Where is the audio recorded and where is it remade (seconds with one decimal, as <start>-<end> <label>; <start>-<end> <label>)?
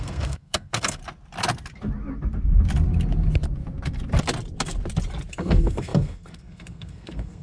0.0-1.0 remade; 1.0-5.3 recorded; 5.3-7.4 remade